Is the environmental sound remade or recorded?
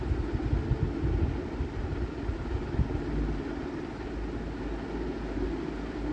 recorded